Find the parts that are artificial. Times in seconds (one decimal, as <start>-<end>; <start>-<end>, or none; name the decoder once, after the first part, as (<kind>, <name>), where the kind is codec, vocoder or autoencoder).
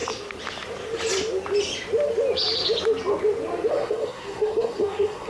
3.7-5.3 (codec, SNAC)